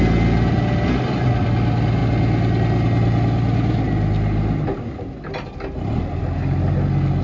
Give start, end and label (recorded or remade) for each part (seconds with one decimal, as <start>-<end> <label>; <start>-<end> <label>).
0.0-7.2 recorded

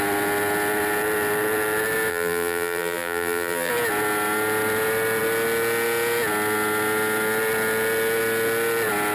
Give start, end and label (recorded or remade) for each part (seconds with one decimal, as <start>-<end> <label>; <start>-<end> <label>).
0.0-2.1 recorded; 2.1-3.7 remade; 3.7-9.1 recorded

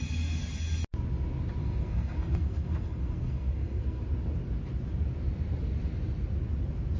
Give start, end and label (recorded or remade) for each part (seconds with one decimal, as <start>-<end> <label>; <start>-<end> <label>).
0.0-1.6 recorded; 1.6-4.0 remade; 4.0-7.0 recorded

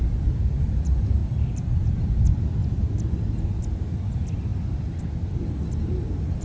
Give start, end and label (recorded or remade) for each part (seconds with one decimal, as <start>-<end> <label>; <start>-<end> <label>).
0.0-6.4 recorded

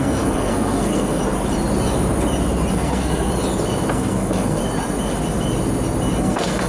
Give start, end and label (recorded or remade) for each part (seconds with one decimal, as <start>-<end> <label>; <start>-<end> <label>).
0.0-1.2 remade; 1.2-2.7 recorded; 2.7-3.3 remade; 3.3-3.9 recorded; 3.9-4.6 remade; 4.6-6.2 recorded; 6.2-6.7 remade

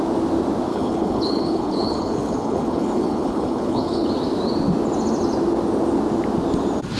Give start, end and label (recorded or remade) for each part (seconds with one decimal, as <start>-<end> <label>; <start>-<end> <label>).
0.0-0.7 recorded; 0.7-4.1 remade; 4.1-7.0 recorded

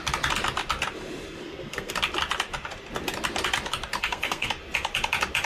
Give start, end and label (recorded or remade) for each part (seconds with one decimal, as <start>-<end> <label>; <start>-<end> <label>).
0.0-1.4 recorded; 1.4-1.9 remade; 1.9-4.0 recorded; 4.0-4.5 remade; 4.5-5.4 recorded